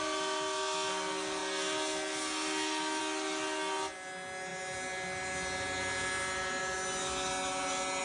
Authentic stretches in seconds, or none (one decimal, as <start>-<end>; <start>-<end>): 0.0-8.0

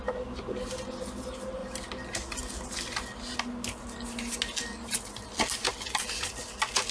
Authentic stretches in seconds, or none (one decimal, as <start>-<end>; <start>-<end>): 0.0-6.9

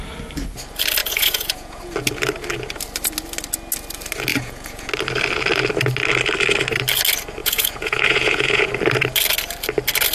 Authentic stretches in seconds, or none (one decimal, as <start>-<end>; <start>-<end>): 0.0-1.0; 1.8-4.3; 4.9-7.4; 8.7-10.1

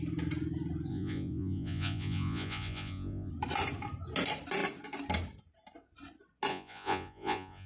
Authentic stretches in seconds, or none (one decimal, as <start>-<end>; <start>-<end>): 0.0-0.9; 3.3-6.5